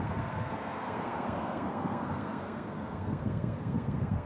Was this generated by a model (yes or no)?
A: yes